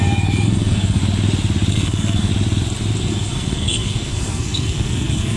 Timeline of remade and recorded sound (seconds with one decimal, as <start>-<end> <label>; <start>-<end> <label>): 0.0-1.0 remade; 1.0-1.7 recorded; 1.7-2.3 remade; 2.3-3.1 recorded; 3.1-5.4 remade